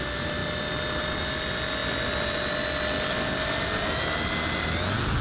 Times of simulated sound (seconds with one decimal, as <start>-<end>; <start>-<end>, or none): none